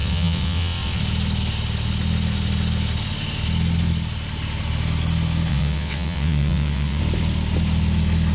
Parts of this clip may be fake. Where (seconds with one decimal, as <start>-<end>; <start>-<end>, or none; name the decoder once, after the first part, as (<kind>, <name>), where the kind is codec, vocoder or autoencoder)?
0.0-1.0 (vocoder, WaveNeXt); 5.5-7.0